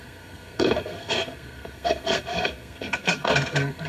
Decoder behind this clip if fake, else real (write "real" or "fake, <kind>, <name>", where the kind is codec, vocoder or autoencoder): fake, codec, SNAC